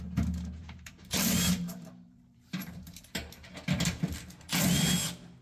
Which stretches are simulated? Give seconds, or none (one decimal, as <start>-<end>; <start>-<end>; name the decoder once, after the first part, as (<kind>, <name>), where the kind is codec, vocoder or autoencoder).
0.6-3.0 (vocoder, BigVGAN v2)